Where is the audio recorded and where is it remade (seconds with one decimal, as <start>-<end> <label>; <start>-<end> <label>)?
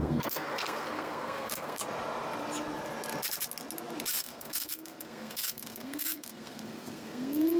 0.0-1.8 remade; 1.8-4.1 recorded; 4.1-7.6 remade